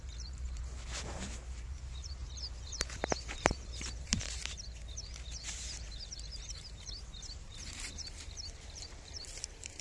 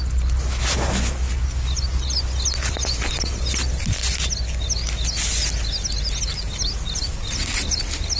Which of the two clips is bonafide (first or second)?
second